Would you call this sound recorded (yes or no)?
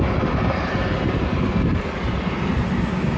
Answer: yes